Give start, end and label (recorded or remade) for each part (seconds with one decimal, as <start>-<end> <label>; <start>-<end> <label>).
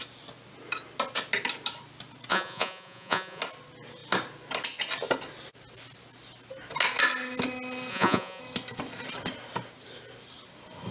0.0-2.3 recorded; 2.3-3.4 remade; 3.4-7.9 recorded; 7.9-8.4 remade; 8.4-10.9 recorded